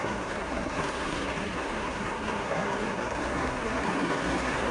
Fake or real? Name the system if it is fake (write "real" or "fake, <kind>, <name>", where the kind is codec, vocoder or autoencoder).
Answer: fake, codec, SNAC